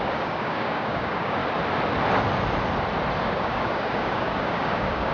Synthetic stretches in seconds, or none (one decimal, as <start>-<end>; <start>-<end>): 0.0-1.4; 3.2-5.1